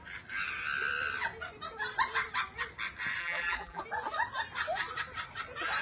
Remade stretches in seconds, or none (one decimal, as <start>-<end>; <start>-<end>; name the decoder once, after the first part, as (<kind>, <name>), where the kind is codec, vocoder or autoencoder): 3.2-3.8 (vocoder, BigVGAN v2)